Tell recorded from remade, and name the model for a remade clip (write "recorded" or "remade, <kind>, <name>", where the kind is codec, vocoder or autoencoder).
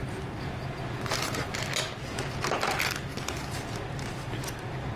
recorded